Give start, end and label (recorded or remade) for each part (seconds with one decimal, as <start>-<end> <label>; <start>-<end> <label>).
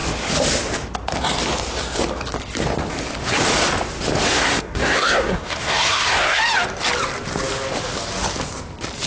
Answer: 0.0-4.3 recorded; 4.3-6.4 remade; 6.4-9.1 recorded